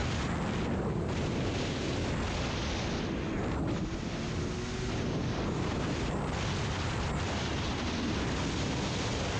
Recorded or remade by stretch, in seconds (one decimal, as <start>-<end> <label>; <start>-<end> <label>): 0.0-5.2 recorded; 5.2-8.2 remade; 8.2-9.4 recorded